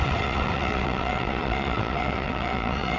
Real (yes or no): no